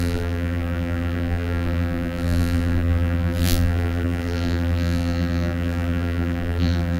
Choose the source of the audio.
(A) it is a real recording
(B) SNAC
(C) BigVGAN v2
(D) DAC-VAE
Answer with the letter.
C